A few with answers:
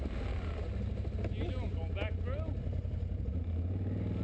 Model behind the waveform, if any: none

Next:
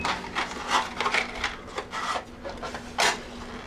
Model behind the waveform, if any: none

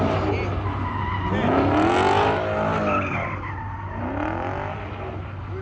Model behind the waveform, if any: none